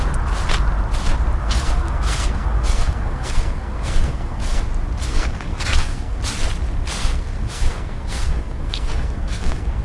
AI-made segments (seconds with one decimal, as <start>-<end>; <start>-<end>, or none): 1.4-4.6; 5.1-6.2; 6.9-9.8